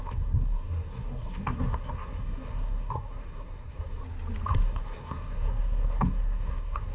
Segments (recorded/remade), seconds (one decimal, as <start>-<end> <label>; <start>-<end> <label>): 0.0-4.0 remade; 4.0-4.5 recorded; 4.5-6.9 remade